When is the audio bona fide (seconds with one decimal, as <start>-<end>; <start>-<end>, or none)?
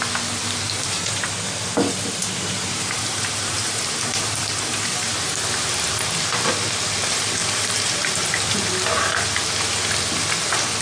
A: 0.0-0.4; 1.2-2.2; 6.0-7.4; 8.3-10.8